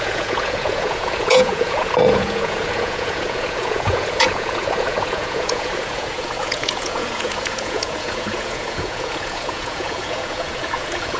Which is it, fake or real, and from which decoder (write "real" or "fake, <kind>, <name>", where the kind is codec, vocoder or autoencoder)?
fake, vocoder, Vocos